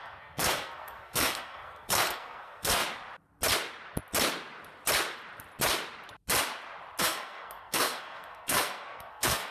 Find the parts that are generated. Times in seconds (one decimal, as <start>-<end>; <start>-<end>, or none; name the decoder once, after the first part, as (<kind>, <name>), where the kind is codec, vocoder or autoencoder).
0.0-2.8 (codec, SNAC); 7.0-9.5